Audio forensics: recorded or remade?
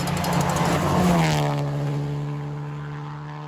recorded